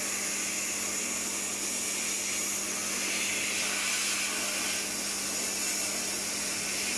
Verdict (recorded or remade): recorded